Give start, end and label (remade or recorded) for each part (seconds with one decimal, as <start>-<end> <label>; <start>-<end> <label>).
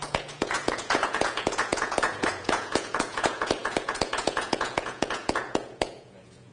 0.0-6.5 remade